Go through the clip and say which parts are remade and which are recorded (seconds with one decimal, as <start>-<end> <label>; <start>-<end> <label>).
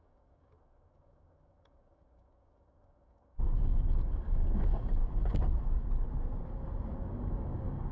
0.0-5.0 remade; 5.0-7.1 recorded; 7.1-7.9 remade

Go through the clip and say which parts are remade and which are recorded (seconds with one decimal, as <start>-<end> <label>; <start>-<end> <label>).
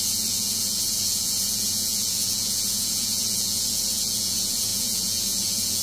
0.0-5.8 remade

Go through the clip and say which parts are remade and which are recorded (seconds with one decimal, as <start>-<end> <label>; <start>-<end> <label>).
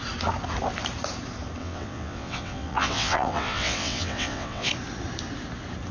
0.0-1.6 recorded; 1.6-4.7 remade; 4.7-5.9 recorded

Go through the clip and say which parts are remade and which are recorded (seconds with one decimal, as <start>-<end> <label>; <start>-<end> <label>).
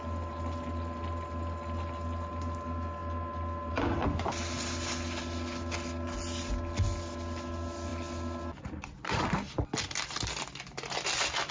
0.0-11.5 recorded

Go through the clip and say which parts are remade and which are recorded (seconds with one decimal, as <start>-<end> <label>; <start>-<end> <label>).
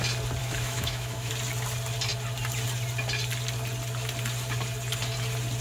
0.0-0.4 recorded; 0.4-1.3 remade; 1.3-5.6 recorded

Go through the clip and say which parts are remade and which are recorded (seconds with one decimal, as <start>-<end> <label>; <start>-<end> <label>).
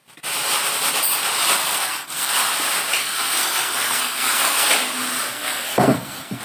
0.0-1.6 recorded; 1.6-2.3 remade; 2.3-3.0 recorded; 3.0-4.7 remade; 4.7-5.3 recorded; 5.3-6.4 remade